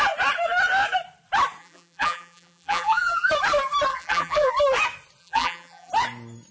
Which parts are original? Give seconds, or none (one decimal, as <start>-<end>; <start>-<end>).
0.0-1.6; 3.3-3.9; 4.5-5.2; 5.9-6.5